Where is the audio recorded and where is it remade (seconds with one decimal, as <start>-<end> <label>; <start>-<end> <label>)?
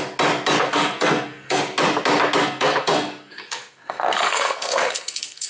0.0-0.6 recorded; 0.6-1.6 remade; 1.6-2.4 recorded; 2.4-5.5 remade